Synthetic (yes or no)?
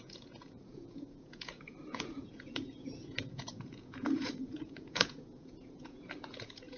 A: yes